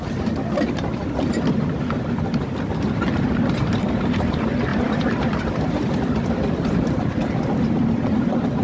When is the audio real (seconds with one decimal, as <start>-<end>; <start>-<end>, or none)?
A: 0.0-4.7; 7.2-8.6